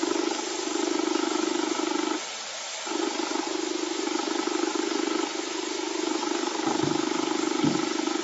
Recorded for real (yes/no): yes